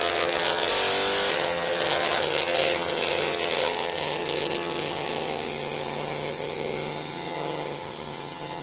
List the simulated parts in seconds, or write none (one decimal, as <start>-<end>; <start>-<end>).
0.0-0.7; 1.3-8.6